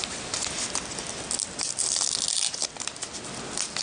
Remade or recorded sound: recorded